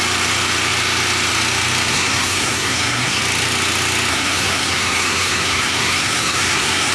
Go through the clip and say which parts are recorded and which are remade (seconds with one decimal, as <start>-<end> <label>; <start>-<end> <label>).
0.0-1.9 recorded; 1.9-3.2 remade; 3.2-4.1 recorded; 4.1-6.9 remade